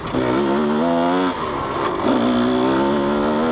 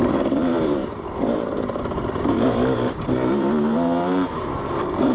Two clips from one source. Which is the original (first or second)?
first